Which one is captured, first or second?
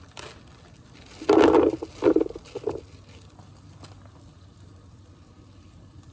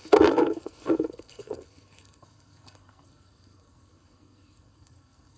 first